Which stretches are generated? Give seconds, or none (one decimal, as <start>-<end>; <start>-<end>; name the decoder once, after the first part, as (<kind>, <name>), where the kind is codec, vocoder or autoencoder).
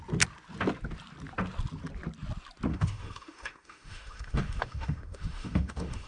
2.7-6.1 (autoencoder, DAC-VAE)